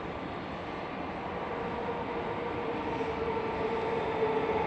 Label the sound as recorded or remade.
recorded